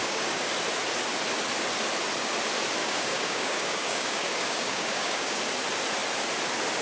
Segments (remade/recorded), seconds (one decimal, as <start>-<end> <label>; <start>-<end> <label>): 0.0-0.5 remade; 0.5-2.8 recorded; 2.8-5.4 remade; 5.4-6.8 recorded